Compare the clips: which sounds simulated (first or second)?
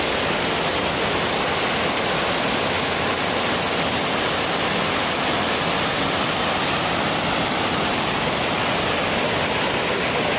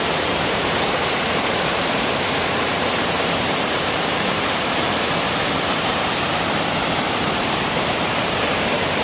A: second